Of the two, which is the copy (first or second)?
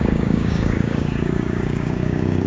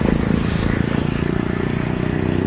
first